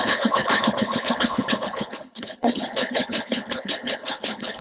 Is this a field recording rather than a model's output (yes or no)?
no